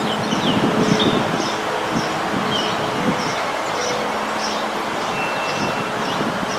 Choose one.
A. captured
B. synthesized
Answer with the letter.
A